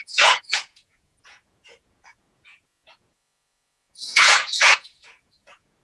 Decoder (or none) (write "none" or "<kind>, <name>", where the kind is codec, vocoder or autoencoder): vocoder, Vocos